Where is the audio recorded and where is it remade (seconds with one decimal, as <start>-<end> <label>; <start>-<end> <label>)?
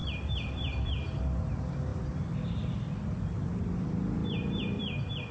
0.0-1.2 remade; 1.2-4.2 recorded; 4.2-5.3 remade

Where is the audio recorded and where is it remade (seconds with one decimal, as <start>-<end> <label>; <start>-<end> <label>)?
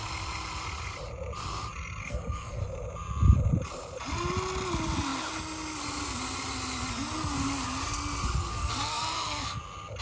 0.0-2.0 recorded; 2.0-2.6 remade; 2.6-8.5 recorded; 8.5-9.6 remade; 9.6-10.0 recorded